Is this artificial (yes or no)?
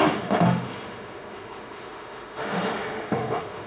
yes